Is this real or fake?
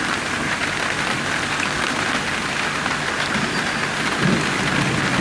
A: real